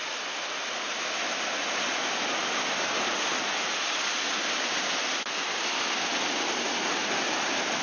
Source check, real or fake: real